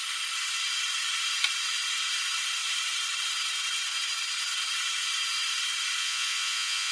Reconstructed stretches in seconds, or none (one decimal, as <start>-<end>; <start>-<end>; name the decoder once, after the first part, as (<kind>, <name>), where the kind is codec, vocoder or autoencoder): 6.0-6.9 (vocoder, Vocos)